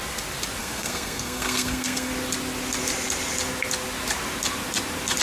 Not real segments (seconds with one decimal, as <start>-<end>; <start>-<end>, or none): 0.6-2.1